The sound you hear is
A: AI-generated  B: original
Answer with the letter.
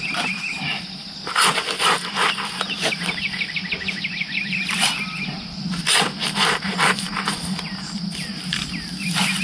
A